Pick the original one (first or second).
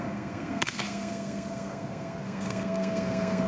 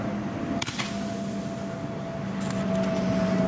second